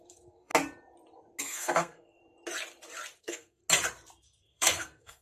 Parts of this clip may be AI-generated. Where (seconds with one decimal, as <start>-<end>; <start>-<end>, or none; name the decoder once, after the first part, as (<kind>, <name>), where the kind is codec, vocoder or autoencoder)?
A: 0.0-0.5 (codec, SNAC); 1.4-2.2; 3.2-3.6; 4.2-5.2